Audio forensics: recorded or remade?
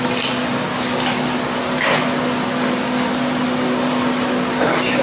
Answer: recorded